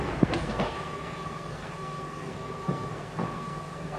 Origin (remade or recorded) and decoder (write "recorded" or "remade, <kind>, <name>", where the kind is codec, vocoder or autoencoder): remade, codec, SNAC